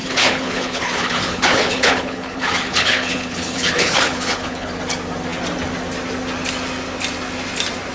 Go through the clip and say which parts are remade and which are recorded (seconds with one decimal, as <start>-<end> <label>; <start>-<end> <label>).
0.0-4.7 remade; 4.7-7.9 recorded